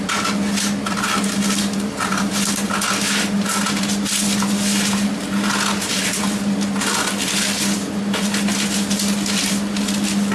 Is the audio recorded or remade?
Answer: recorded